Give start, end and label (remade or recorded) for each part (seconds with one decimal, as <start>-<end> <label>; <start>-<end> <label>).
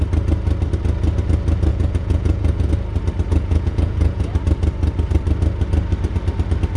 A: 0.0-1.7 recorded; 1.7-2.7 remade; 2.7-3.3 recorded; 3.3-4.3 remade; 4.3-6.8 recorded